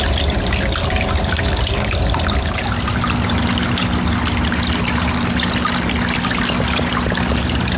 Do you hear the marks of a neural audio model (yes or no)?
no